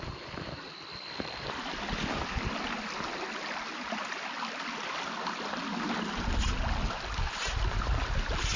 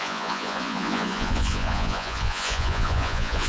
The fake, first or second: second